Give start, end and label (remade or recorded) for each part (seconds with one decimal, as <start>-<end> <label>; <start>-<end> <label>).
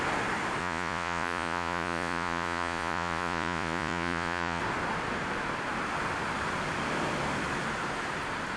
0.0-0.6 recorded; 0.6-4.6 remade; 4.6-8.6 recorded